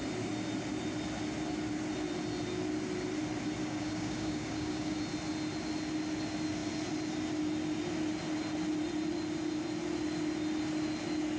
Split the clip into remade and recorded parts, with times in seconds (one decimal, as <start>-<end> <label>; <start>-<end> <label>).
0.0-3.6 recorded; 3.6-5.0 remade; 5.0-11.4 recorded